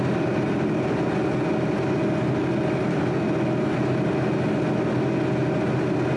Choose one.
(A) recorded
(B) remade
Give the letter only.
A